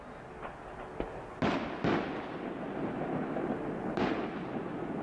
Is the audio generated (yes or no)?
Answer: no